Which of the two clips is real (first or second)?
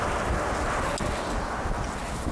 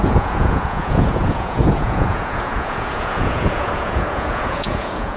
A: first